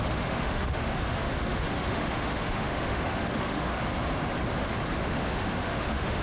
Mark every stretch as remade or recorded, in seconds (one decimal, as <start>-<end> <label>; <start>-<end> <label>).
0.0-3.7 remade; 3.7-5.0 recorded; 5.0-6.2 remade